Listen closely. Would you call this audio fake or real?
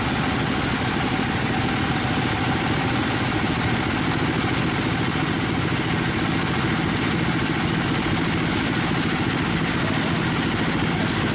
real